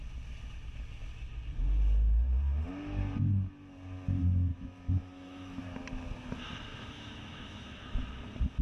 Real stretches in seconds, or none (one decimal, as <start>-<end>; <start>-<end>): 0.0-4.5; 5.6-6.7; 8.1-8.6